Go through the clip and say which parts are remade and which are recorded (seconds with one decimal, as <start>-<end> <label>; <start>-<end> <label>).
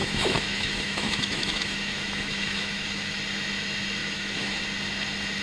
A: 0.0-3.2 remade; 3.2-4.0 recorded; 4.0-4.6 remade; 4.6-5.4 recorded